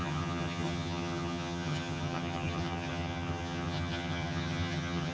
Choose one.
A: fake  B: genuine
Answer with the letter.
A